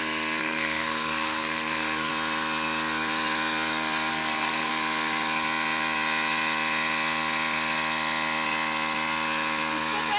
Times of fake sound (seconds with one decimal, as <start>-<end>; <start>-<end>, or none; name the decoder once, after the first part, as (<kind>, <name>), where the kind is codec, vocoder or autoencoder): 0.4-2.1 (codec, SNAC); 4.1-4.7